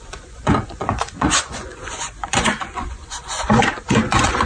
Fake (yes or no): yes